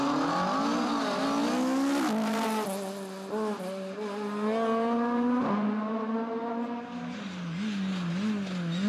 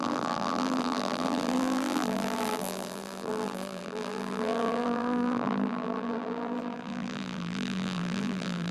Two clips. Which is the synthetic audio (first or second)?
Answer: second